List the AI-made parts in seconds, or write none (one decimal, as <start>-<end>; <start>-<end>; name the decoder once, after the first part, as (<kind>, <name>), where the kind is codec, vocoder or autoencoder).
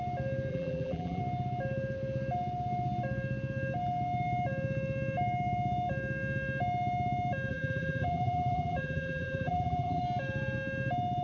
0.5-1.2 (vocoder, BigVGAN v2); 7.5-10.0